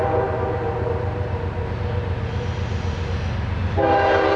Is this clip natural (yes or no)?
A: yes